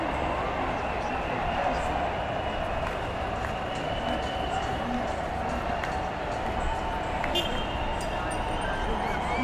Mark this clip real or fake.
real